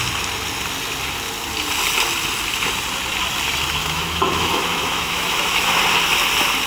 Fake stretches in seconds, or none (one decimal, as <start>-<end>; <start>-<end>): 3.8-5.8